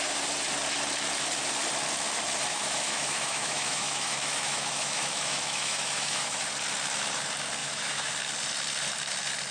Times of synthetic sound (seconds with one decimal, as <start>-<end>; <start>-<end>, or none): 2.5-6.4; 7.6-8.1